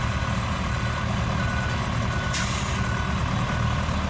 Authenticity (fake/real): real